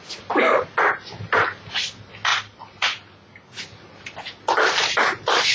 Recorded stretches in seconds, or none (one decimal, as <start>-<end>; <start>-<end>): 0.0-5.5